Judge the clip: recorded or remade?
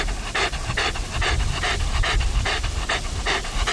recorded